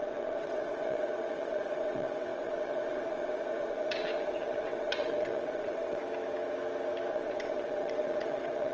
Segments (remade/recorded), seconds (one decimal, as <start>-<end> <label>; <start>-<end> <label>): 0.0-6.0 remade; 6.0-7.1 recorded; 7.1-8.7 remade